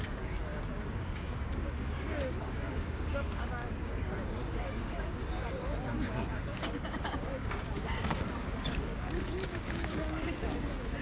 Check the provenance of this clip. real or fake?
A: fake